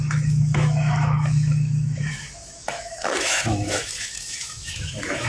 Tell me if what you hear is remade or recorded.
remade